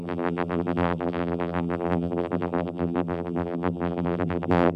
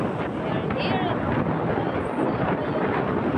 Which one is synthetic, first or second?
first